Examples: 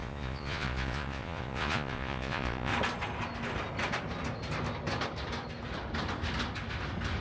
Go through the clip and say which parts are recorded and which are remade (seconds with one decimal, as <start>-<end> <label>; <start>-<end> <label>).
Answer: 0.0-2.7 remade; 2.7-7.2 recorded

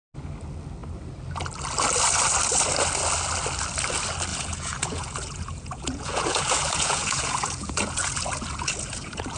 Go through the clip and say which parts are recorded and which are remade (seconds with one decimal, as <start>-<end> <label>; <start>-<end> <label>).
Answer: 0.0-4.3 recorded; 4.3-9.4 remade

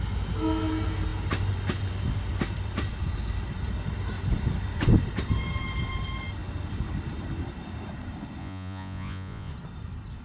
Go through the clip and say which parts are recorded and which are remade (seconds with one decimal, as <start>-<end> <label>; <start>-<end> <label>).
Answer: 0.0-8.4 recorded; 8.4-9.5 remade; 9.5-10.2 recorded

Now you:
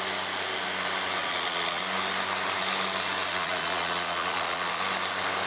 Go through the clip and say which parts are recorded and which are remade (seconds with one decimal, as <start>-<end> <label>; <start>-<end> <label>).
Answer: 0.0-1.2 recorded; 1.2-1.8 remade; 1.8-3.3 recorded; 3.3-4.8 remade; 4.8-5.5 recorded

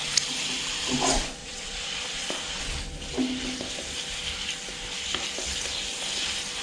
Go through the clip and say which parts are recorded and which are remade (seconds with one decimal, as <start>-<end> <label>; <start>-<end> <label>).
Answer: 0.0-1.4 recorded; 1.4-2.6 remade; 2.6-6.6 recorded

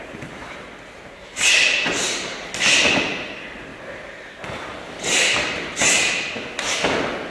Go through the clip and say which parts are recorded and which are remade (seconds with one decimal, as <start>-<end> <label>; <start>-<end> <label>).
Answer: 0.0-7.3 recorded

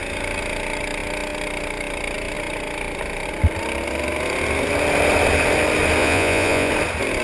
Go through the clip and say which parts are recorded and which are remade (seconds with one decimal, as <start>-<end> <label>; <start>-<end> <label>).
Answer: 0.0-6.0 recorded; 6.0-6.7 remade; 6.7-7.2 recorded

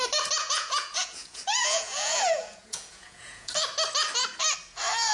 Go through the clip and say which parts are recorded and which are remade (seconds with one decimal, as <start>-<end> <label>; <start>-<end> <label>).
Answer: 0.0-0.4 recorded; 0.4-3.5 remade; 3.5-5.1 recorded